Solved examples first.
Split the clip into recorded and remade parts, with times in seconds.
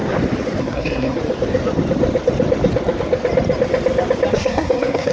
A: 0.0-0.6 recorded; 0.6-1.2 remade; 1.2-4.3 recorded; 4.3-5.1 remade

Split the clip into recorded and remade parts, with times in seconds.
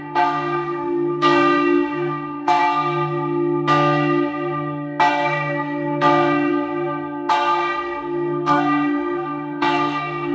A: 0.0-2.6 remade; 2.6-5.1 recorded; 5.1-6.5 remade; 6.5-7.3 recorded; 7.3-10.3 remade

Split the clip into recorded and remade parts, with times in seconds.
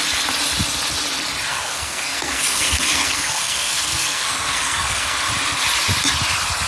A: 0.0-1.5 recorded; 1.5-5.3 remade; 5.3-6.7 recorded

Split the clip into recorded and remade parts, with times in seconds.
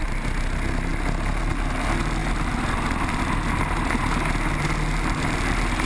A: 0.0-5.9 recorded